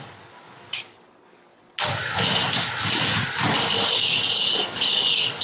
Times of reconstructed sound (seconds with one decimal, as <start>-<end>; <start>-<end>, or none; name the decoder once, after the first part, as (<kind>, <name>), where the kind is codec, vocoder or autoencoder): 0.0-1.5 (codec, DAC); 4.7-5.4